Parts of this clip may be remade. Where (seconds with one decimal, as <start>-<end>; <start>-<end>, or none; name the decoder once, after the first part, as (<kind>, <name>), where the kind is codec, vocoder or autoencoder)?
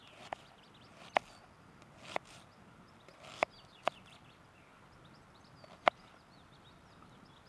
none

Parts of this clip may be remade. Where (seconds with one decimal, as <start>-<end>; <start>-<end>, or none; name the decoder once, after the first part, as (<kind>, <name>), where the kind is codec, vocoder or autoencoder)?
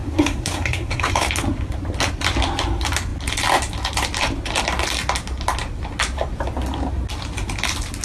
0.0-1.3 (codec, SNAC)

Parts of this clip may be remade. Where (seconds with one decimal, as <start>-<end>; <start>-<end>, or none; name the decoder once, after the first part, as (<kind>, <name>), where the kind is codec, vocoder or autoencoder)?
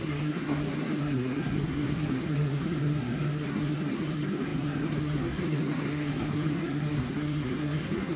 0.0-8.2 (codec, SNAC)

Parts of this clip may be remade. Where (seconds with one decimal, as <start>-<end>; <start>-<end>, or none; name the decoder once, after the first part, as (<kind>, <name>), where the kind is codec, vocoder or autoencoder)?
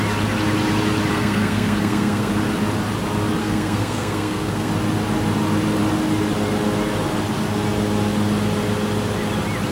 1.1-2.3 (codec, SNAC); 3.4-4.7